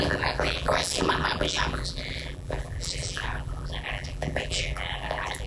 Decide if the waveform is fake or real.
fake